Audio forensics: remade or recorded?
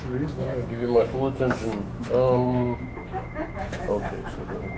remade